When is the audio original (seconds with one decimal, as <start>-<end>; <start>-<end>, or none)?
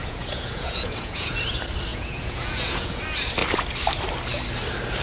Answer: 1.3-1.9; 3.0-5.0